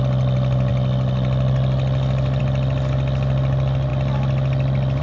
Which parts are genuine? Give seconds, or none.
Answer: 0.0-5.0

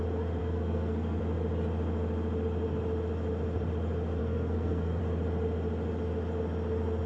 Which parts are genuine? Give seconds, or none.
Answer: 0.0-0.4; 1.2-4.2; 5.0-7.1

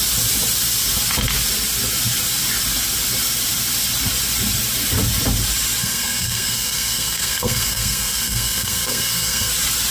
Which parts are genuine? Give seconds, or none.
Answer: 0.0-5.8; 9.5-9.9

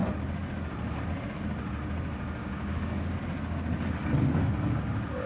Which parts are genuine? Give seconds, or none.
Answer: 0.0-2.4; 3.2-5.3

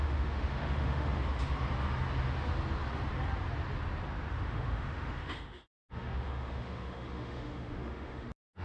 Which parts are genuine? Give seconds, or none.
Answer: 1.2-4.3

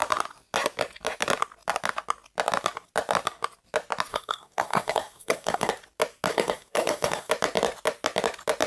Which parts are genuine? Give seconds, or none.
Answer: 0.0-4.1; 5.7-6.3; 7.3-8.7

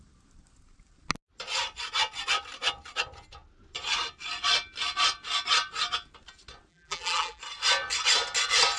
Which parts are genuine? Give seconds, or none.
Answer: 0.0-6.7; 7.4-8.8